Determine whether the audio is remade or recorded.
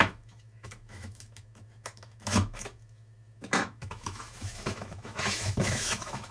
remade